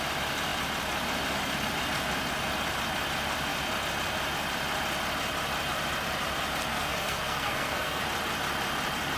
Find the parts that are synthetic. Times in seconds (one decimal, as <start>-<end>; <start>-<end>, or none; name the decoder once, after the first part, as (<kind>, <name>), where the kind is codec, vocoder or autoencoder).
6.7-8.0 (codec, SNAC)